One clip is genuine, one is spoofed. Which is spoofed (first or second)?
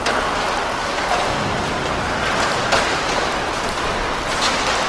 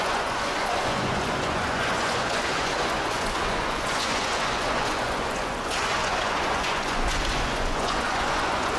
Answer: second